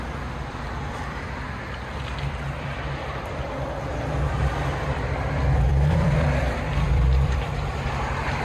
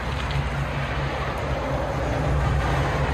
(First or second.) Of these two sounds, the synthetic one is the first